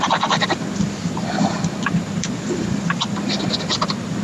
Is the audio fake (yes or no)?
yes